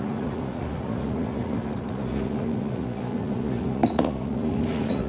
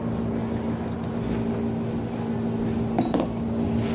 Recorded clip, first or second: second